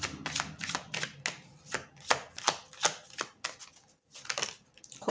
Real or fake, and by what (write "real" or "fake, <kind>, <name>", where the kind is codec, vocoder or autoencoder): real